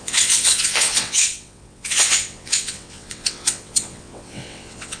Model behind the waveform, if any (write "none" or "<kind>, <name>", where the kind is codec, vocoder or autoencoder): vocoder, WaveNeXt